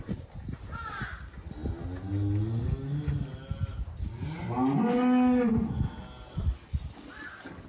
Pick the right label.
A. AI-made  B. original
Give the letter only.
B